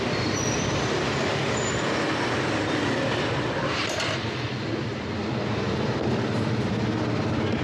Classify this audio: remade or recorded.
remade